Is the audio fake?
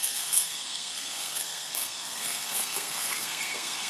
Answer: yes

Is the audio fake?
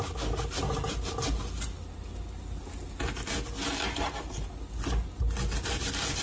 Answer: no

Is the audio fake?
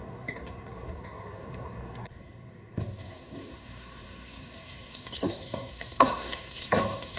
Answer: yes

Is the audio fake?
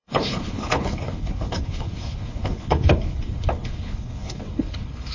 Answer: yes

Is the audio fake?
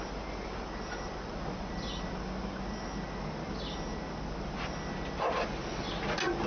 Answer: no